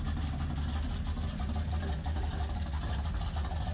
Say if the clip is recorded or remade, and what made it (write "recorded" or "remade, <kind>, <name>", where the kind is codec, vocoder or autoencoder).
recorded